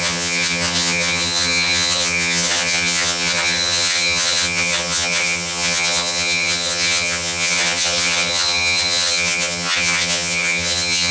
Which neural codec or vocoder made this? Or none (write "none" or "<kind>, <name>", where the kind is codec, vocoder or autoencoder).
vocoder, HiFi-GAN